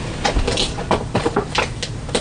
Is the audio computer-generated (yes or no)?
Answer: no